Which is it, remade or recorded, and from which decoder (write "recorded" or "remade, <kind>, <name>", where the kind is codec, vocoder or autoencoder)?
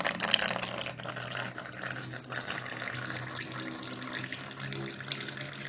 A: recorded